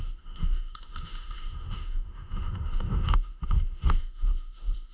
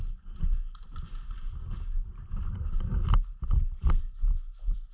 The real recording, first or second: second